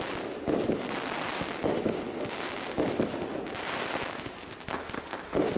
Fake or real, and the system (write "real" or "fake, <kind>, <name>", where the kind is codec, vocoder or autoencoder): real